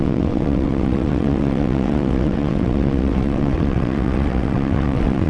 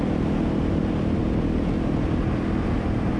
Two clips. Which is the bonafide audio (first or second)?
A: second